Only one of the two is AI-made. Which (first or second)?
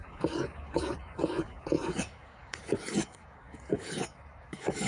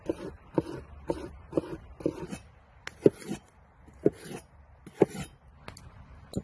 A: first